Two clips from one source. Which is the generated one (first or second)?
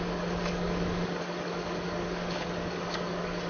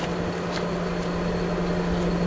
first